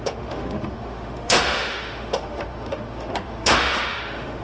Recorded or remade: remade